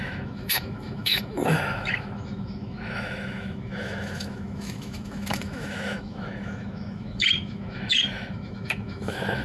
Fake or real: fake